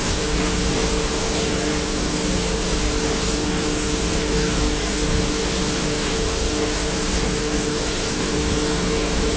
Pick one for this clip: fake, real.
fake